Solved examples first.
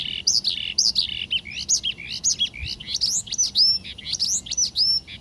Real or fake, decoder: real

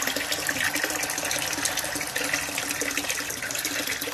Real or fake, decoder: real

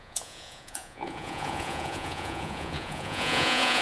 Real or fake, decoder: fake, vocoder, Vocos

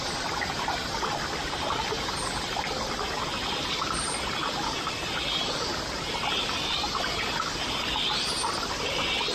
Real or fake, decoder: real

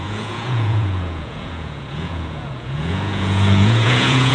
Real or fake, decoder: fake, vocoder, Vocos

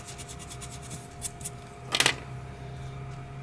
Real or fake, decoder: real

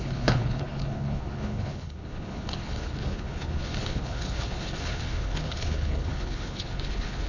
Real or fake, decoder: fake, codec, HILCodec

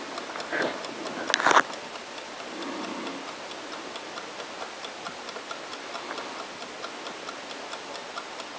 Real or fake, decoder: real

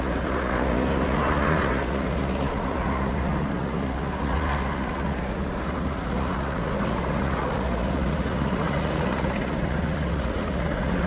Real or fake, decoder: fake, vocoder, Vocos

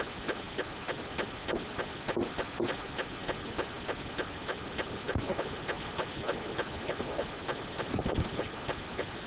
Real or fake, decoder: real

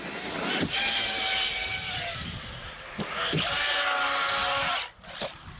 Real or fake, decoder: real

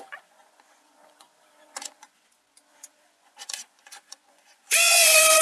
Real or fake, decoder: fake, vocoder, Vocos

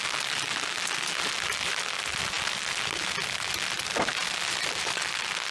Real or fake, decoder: real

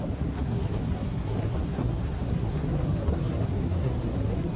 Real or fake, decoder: fake, codec, SNAC